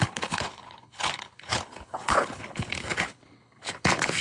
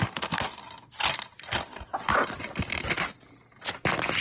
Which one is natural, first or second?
second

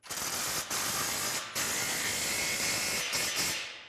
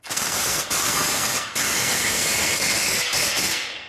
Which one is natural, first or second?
first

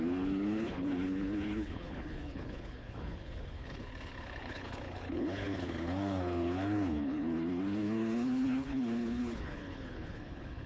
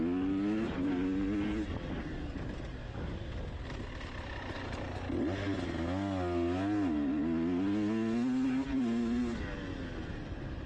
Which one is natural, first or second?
second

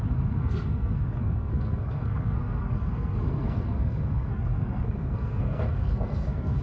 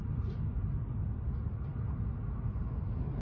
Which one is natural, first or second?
second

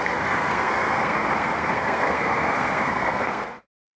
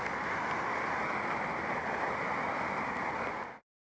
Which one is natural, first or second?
second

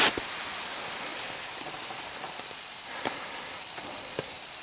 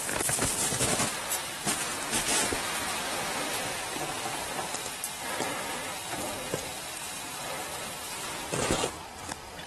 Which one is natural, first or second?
second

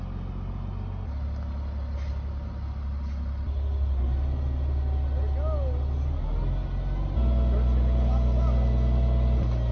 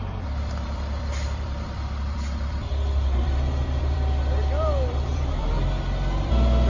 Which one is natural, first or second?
first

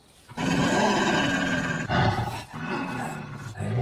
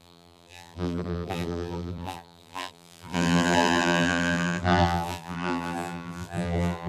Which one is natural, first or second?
first